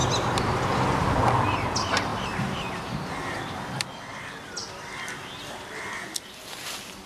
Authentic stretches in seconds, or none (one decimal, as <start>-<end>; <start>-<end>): 0.0-2.1; 3.7-7.1